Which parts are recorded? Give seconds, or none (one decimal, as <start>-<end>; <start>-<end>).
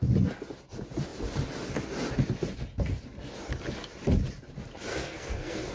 0.0-4.9